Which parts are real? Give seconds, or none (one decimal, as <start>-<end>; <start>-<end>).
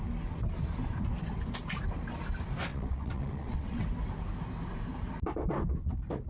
0.0-2.7; 3.8-6.3